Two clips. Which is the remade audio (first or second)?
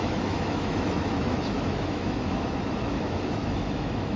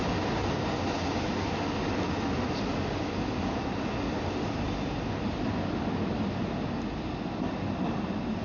first